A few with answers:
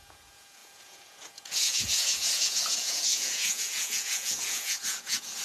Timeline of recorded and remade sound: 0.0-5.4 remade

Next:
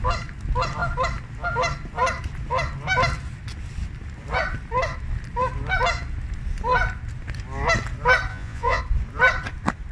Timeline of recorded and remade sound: 0.0-8.3 recorded; 8.3-8.8 remade; 8.8-9.9 recorded

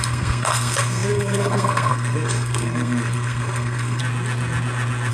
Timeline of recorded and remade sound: 0.0-4.0 remade; 4.0-5.1 recorded

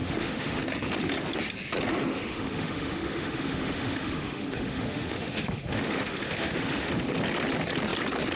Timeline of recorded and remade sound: 0.0-0.6 remade; 0.6-2.1 recorded; 2.1-6.9 remade; 6.9-8.4 recorded

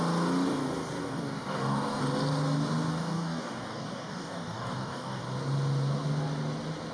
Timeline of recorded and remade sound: 0.0-1.0 recorded; 1.0-2.0 remade; 2.0-2.9 recorded; 2.9-5.2 remade; 5.2-6.9 recorded